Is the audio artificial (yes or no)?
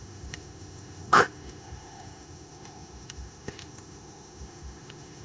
yes